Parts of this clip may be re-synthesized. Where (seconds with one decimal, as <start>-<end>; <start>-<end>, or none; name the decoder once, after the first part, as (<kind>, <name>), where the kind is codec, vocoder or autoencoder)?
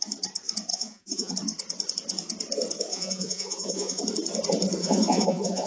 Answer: 0.7-1.3 (vocoder, Vocos); 2.9-4.0; 4.8-5.7